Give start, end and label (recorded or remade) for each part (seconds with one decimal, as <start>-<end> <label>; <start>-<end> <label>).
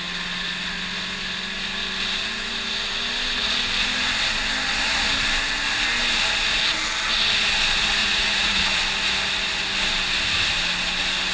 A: 0.0-8.0 recorded; 8.0-8.8 remade; 8.8-11.3 recorded